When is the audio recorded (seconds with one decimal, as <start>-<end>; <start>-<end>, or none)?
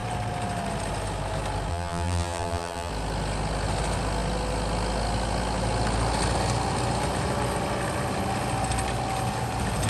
0.0-1.7; 2.9-9.9